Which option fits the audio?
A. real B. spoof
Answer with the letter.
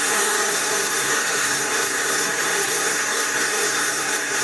B